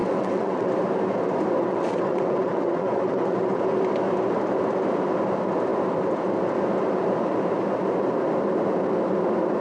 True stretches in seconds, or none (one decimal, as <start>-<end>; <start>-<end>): 0.7-1.6; 3.6-9.6